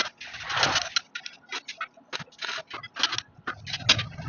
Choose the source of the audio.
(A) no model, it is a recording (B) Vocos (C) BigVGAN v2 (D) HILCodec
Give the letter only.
A